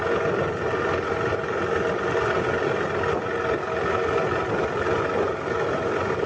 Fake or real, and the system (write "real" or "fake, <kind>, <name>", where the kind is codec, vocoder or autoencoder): real